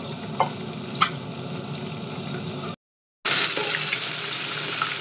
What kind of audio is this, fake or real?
real